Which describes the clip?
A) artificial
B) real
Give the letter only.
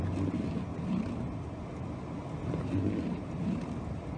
B